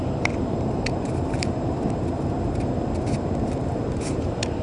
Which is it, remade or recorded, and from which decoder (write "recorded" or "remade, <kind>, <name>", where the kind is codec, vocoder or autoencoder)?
remade, vocoder, BigVGAN v2